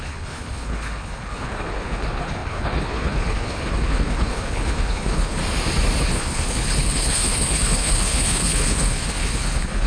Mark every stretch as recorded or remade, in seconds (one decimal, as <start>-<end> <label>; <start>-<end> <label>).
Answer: 0.0-5.4 remade; 5.4-6.0 recorded; 6.0-9.9 remade